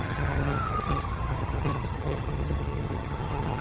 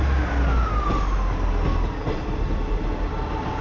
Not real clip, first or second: first